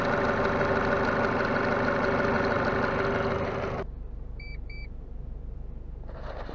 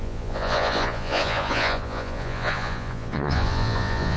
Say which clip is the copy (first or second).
second